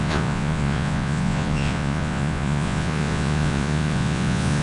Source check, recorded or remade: remade